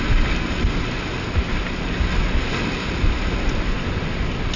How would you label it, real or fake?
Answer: real